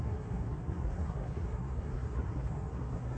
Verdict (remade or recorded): remade